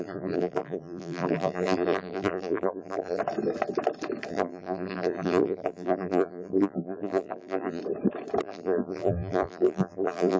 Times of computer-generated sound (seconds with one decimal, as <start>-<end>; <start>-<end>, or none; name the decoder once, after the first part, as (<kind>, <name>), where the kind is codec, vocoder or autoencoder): 0.0-3.2 (vocoder, BigVGAN v2); 4.3-7.8; 8.4-10.4